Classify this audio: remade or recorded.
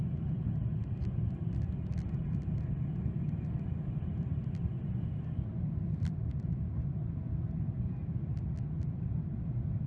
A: recorded